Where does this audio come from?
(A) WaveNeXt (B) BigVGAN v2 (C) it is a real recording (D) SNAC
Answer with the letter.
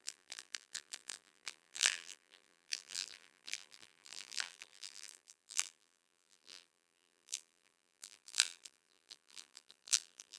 B